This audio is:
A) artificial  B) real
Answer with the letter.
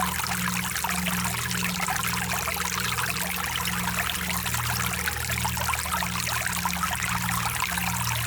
B